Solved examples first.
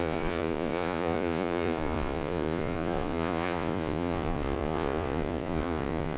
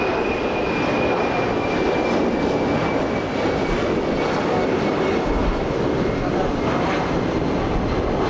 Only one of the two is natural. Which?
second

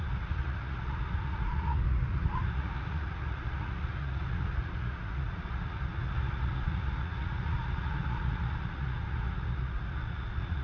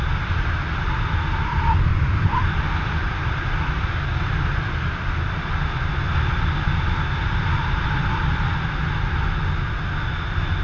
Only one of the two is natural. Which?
second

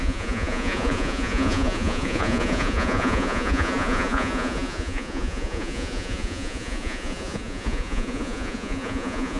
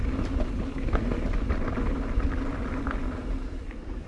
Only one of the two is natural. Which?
second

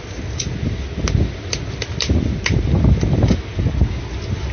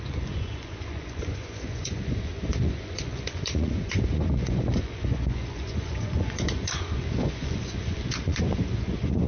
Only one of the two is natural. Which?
first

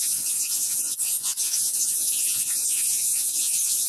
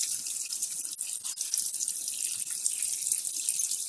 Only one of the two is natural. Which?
second